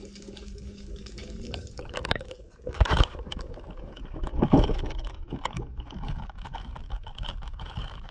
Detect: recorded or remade remade